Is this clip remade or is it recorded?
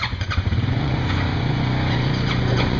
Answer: remade